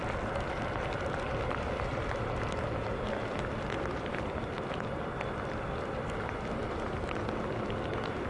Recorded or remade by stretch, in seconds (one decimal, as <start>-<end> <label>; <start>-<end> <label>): 0.0-8.3 remade